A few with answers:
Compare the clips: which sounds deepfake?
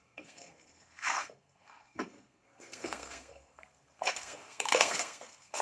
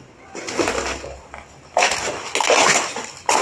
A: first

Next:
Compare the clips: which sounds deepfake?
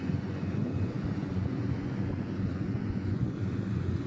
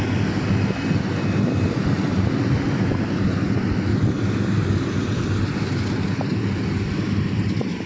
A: first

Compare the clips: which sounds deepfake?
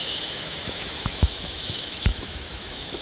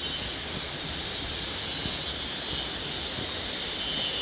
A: first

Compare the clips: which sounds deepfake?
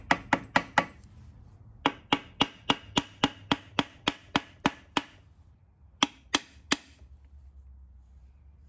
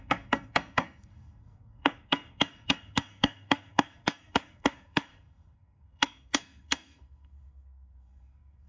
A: second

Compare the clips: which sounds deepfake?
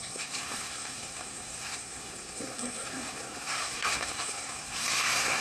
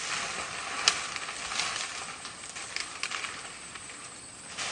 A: first